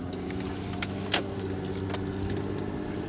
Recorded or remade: recorded